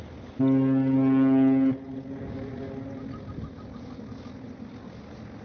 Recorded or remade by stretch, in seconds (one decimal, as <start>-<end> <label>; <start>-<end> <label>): 0.0-5.4 recorded